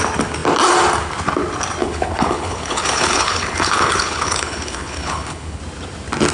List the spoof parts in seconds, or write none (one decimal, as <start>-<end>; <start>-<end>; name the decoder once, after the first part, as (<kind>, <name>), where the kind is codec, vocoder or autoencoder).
1.8-5.6 (codec, HILCodec)

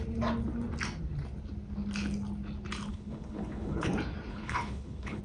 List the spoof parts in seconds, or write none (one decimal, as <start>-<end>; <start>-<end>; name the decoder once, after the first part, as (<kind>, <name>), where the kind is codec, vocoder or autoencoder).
2.9-3.9 (codec, HILCodec); 4.3-5.2

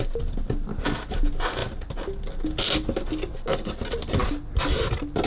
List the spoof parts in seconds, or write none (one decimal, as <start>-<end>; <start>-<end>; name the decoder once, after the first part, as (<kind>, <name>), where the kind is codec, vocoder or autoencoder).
none